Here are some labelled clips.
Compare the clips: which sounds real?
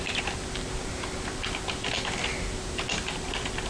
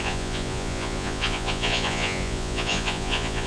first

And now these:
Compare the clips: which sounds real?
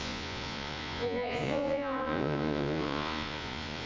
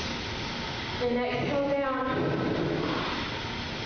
second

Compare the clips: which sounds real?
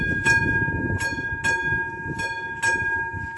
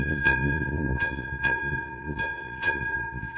first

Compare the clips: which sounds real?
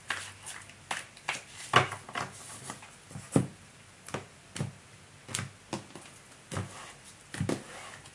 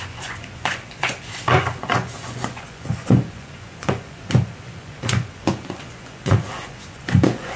first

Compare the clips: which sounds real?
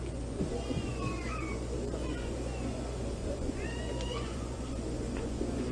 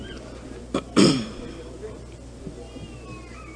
second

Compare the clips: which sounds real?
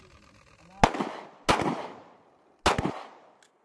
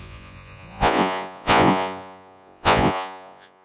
first